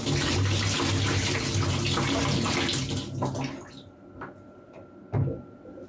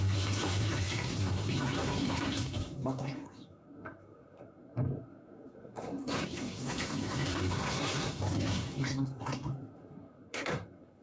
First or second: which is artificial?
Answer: second